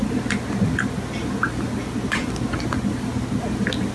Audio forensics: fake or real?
real